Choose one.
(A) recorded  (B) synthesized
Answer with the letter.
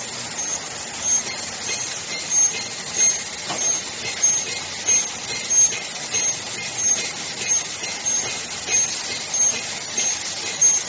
A